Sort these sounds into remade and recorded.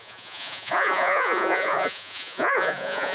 remade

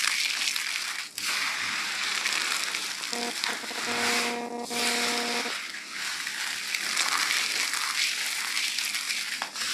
recorded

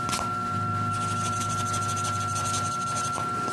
remade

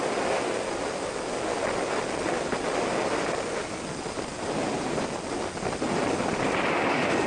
recorded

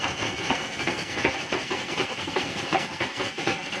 remade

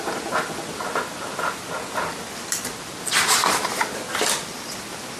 recorded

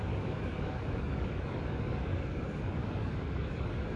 remade